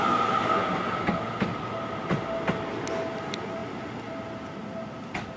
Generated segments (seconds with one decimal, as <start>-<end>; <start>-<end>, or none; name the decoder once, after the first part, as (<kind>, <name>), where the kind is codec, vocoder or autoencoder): none